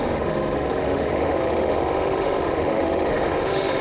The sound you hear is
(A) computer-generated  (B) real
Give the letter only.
A